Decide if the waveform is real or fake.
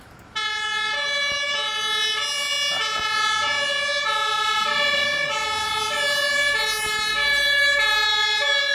real